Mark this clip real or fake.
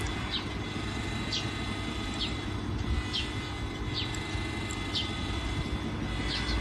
real